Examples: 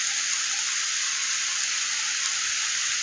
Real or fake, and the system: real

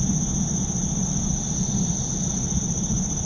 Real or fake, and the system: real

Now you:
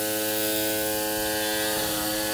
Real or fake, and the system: real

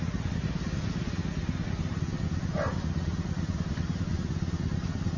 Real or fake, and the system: real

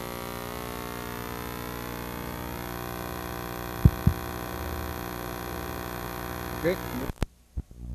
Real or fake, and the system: real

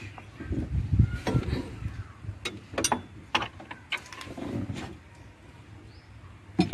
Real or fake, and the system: real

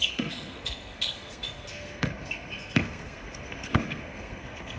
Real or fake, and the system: fake, codec, SNAC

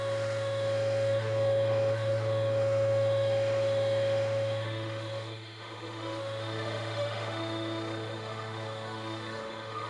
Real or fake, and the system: fake, autoencoder, DAC-VAE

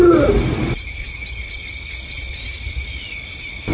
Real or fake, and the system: real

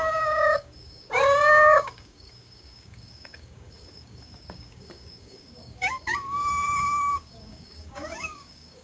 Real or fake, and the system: fake, codec, DAC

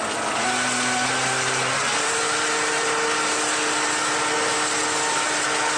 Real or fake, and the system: real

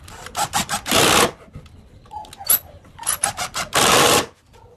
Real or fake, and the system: real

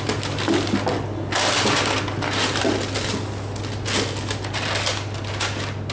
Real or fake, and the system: real